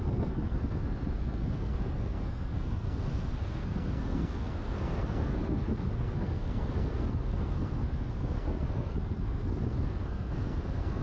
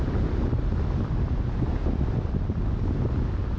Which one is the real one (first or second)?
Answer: second